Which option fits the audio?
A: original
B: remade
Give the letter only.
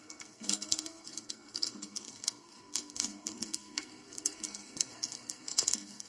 B